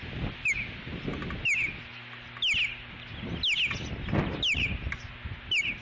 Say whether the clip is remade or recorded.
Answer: recorded